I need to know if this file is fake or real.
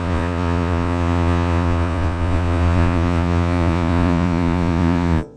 fake